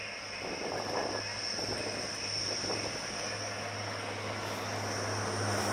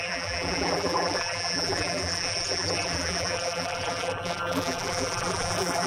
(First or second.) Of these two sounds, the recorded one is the first